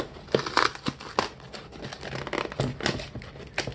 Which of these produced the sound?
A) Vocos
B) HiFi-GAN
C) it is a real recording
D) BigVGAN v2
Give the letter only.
C